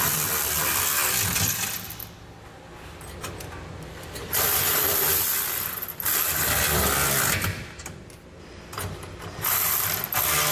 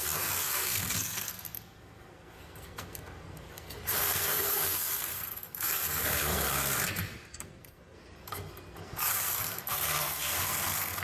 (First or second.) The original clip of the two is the first